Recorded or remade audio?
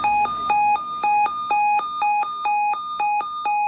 recorded